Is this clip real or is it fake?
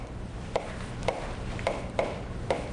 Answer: fake